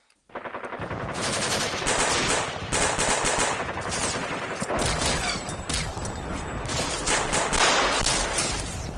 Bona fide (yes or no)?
yes